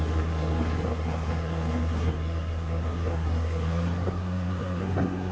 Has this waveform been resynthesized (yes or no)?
yes